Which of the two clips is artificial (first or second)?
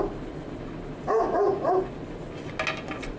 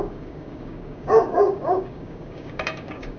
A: second